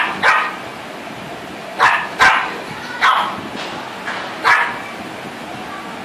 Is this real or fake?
real